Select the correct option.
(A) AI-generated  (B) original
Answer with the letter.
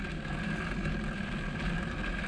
B